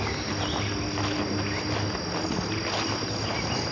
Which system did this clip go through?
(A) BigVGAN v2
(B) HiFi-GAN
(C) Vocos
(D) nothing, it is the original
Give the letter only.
D